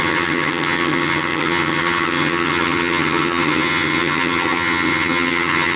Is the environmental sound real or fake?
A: fake